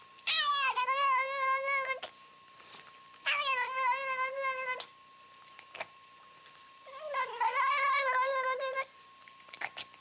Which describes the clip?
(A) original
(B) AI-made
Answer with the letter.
A